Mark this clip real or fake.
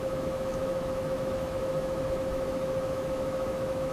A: fake